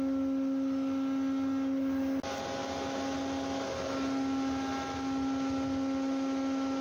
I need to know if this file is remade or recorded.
recorded